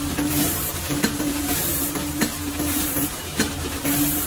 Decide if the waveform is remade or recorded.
remade